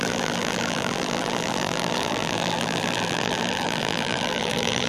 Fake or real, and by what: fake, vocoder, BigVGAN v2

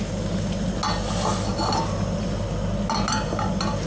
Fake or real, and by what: real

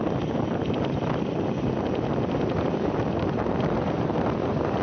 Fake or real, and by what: fake, vocoder, BigVGAN v2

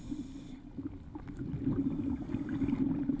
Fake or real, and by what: real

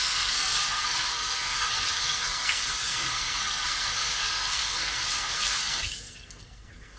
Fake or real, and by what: fake, codec, SNAC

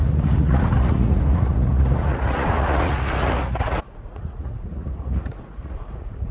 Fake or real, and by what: fake, vocoder, Vocos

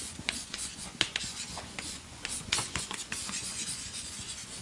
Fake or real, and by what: fake, vocoder, Vocos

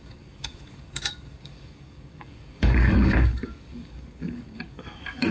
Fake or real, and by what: fake, codec, DAC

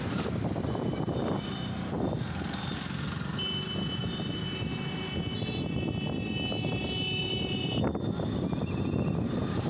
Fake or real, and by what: real